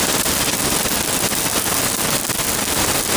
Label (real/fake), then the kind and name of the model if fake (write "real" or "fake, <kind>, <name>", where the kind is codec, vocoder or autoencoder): real